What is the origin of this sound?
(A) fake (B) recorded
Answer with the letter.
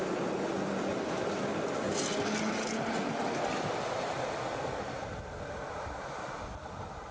B